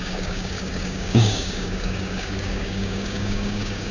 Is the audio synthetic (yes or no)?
yes